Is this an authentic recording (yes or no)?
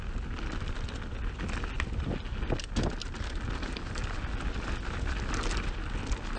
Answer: yes